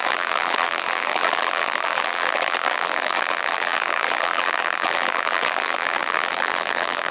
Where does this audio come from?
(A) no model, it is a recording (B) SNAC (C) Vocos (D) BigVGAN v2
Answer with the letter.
D